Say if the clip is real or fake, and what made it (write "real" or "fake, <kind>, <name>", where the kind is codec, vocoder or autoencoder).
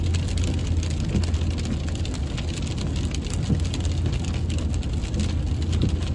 real